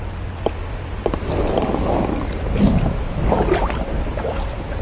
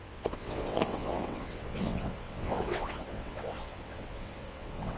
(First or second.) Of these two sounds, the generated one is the second